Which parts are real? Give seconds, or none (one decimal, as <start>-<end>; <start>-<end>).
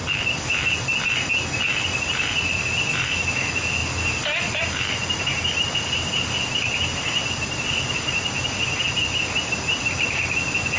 0.0-10.8